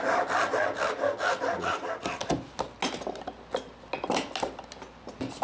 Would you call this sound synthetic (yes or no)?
no